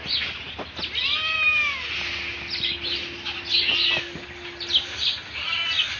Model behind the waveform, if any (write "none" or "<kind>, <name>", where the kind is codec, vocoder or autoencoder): none